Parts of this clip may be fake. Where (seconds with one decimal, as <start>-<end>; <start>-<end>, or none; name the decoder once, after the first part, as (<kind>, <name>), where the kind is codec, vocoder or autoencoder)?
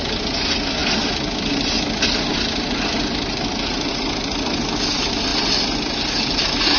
none